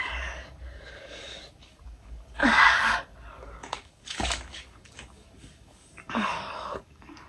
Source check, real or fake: fake